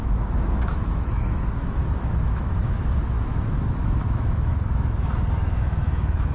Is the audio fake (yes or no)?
yes